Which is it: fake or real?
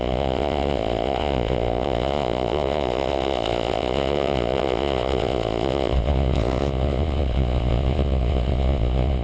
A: fake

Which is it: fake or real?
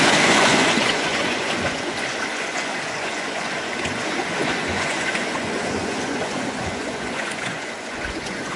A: fake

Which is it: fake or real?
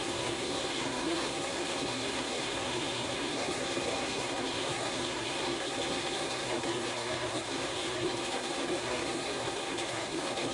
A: fake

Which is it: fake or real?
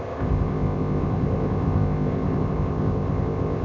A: fake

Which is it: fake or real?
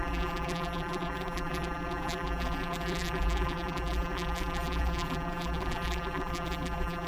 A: fake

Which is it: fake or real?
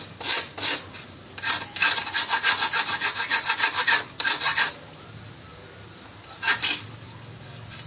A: real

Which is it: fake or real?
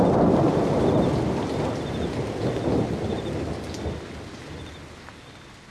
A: real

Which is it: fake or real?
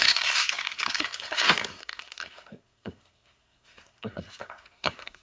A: fake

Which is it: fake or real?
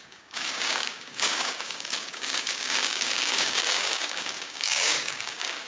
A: fake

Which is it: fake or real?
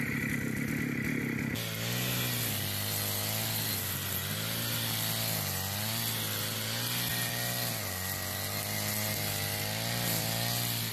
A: real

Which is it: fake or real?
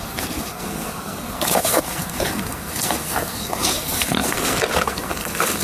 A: fake